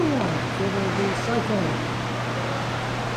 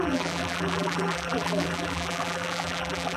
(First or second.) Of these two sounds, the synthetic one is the second